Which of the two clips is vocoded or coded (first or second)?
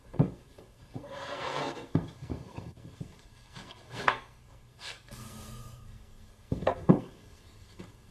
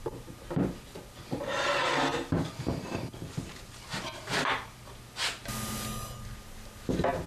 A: first